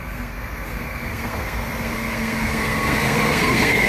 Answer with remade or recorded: remade